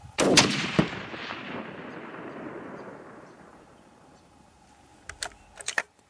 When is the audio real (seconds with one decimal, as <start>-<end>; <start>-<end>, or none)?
4.9-5.6